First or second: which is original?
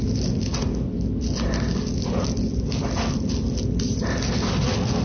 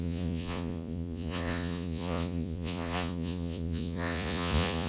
first